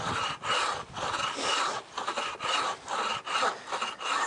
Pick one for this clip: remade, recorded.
recorded